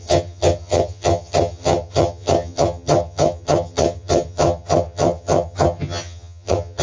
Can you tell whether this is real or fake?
fake